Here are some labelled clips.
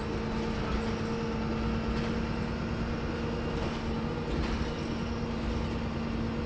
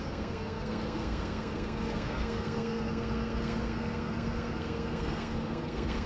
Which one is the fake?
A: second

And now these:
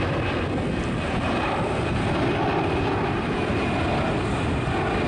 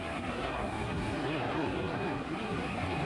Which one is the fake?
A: second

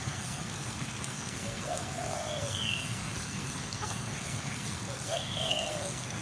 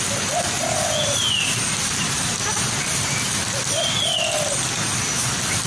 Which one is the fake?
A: first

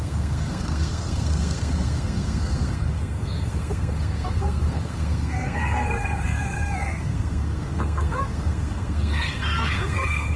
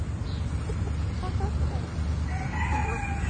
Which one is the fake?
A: first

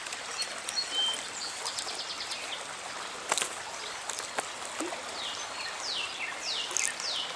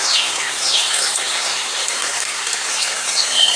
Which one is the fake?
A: second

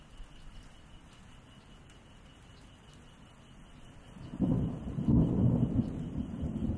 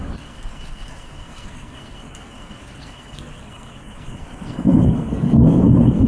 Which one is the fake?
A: second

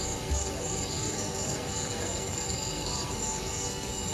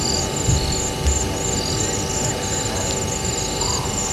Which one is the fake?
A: first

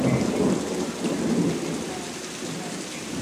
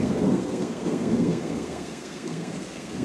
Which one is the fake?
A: second